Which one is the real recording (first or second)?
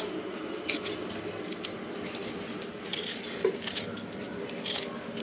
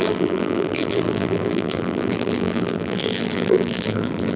first